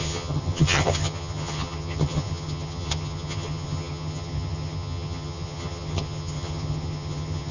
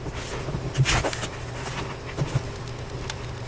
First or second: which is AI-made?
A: first